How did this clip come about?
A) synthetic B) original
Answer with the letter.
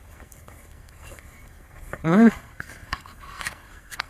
A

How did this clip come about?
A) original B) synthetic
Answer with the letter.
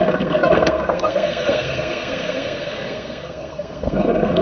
B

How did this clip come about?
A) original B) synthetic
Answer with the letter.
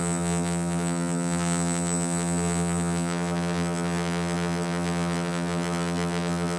B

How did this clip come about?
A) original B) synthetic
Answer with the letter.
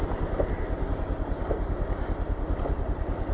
A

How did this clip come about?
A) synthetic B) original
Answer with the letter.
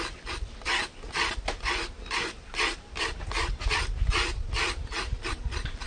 B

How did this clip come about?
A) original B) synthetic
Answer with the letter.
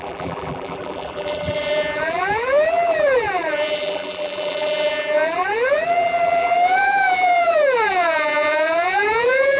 B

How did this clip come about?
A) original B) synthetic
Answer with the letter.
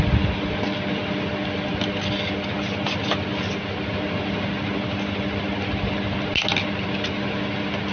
A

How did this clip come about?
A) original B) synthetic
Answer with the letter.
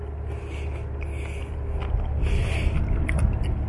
A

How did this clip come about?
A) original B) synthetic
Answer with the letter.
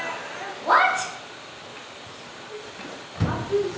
A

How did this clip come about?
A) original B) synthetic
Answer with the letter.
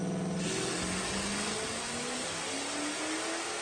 A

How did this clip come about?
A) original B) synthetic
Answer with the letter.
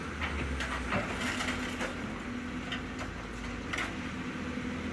A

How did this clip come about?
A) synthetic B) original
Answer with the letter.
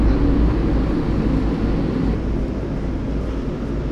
B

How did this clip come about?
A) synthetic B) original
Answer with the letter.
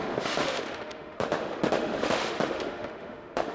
A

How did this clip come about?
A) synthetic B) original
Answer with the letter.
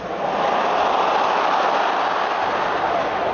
B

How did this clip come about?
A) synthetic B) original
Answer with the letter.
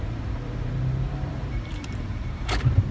A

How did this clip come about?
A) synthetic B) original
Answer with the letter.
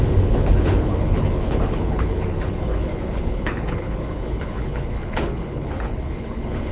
A